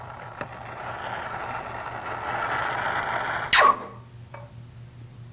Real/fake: real